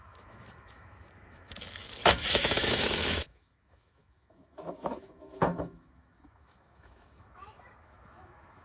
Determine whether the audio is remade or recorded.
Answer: remade